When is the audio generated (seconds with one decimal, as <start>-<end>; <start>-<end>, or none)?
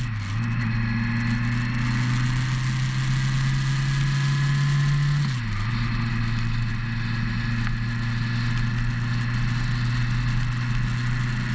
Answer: none